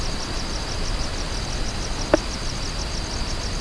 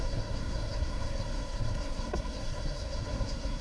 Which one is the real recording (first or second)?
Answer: first